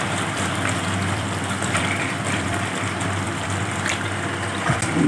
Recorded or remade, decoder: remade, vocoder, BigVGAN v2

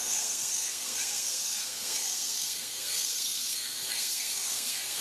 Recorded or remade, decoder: remade, codec, SNAC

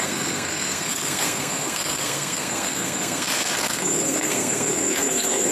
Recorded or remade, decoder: remade, codec, SNAC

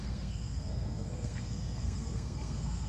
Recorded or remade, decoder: remade, codec, SNAC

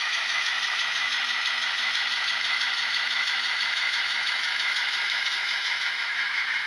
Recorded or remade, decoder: remade, autoencoder, DAC-VAE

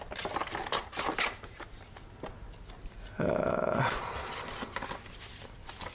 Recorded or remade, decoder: recorded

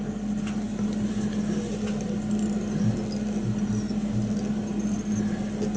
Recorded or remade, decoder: recorded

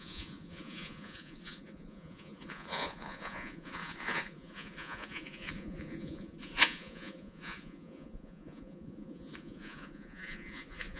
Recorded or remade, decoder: remade, vocoder, Vocos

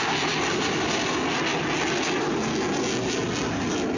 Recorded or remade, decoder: recorded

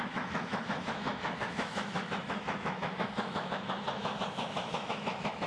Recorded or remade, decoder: remade, autoencoder, DAC-VAE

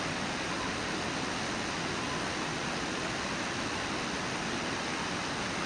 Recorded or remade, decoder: recorded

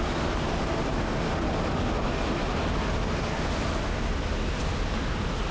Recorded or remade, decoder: recorded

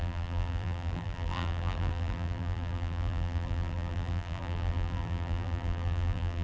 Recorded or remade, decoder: remade, vocoder, BigVGAN v2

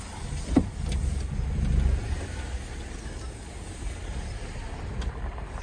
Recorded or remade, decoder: recorded